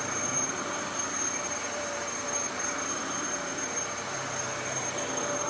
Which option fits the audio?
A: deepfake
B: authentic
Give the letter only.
A